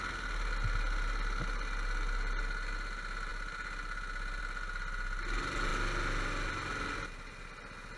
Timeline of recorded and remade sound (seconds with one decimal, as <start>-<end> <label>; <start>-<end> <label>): 0.0-8.0 recorded